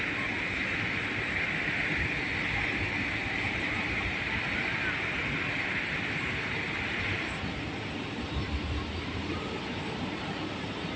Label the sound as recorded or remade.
recorded